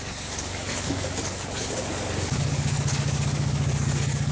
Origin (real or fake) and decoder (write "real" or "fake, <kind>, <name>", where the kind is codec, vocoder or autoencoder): fake, codec, DAC